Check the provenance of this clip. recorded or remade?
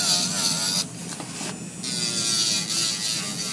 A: recorded